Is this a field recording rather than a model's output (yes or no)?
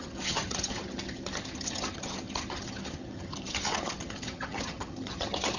no